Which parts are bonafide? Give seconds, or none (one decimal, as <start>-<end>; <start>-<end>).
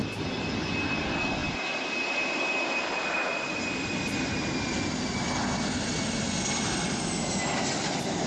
0.0-8.3